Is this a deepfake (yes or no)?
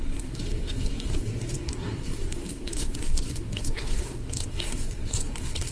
yes